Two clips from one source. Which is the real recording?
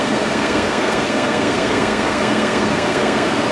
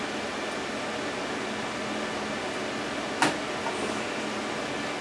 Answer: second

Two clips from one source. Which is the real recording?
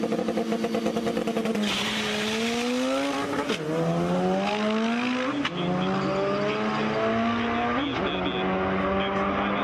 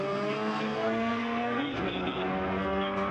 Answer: first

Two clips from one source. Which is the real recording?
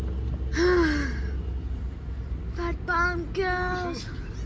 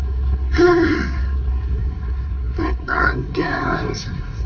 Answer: first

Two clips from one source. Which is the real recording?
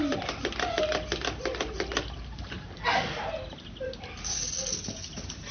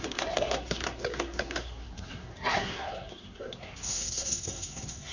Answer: first